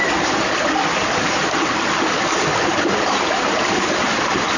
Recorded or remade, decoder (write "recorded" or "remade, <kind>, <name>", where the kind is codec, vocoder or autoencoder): recorded